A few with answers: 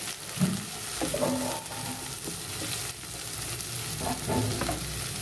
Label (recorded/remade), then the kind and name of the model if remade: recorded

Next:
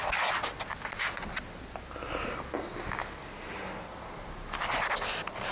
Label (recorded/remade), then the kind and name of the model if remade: recorded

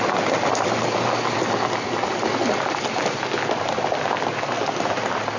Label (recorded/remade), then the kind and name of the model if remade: recorded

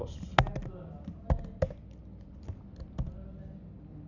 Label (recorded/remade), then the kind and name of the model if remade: recorded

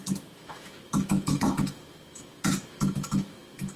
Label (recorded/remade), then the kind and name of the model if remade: remade, autoencoder, DAC-VAE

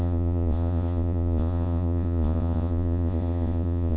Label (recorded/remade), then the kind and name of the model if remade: remade, vocoder, Vocos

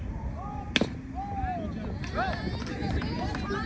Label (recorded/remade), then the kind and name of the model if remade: recorded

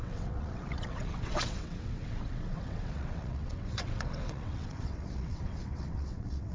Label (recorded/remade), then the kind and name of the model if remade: remade, vocoder, WaveNeXt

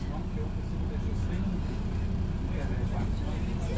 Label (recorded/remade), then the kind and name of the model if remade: recorded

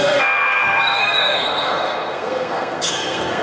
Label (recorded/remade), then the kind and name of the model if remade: remade, codec, SNAC